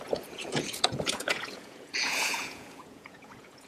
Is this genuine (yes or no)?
no